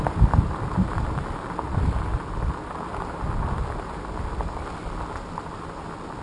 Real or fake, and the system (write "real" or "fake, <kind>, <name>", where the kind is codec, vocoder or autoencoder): real